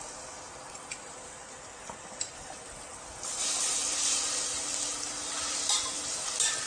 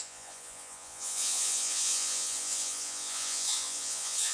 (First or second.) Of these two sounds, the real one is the first